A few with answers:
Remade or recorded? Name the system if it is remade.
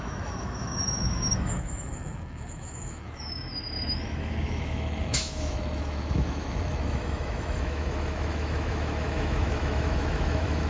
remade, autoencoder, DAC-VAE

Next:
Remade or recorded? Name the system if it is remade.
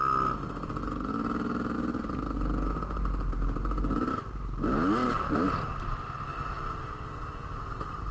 recorded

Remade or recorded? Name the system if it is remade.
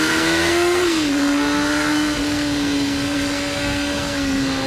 remade, codec, SNAC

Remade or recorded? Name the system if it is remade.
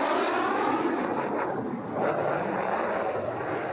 recorded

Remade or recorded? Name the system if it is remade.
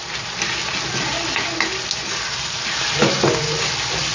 recorded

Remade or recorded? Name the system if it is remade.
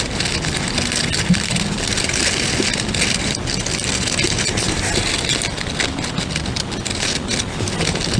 recorded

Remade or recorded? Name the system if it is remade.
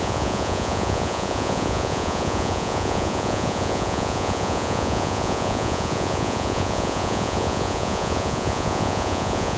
remade, vocoder, Vocos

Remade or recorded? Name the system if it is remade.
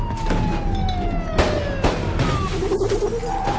recorded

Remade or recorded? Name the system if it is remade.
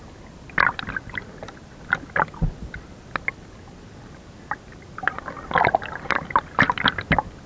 recorded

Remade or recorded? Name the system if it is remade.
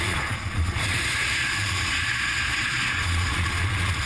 remade, vocoder, Vocos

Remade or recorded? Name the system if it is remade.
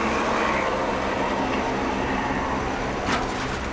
recorded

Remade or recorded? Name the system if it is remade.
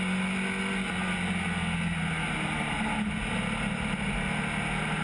recorded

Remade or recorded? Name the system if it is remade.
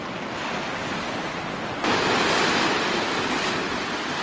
recorded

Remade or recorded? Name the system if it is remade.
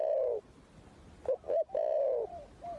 recorded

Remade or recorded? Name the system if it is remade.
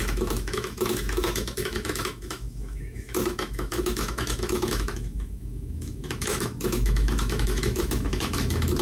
remade, autoencoder, DAC-VAE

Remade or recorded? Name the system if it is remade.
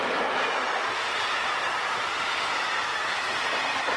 recorded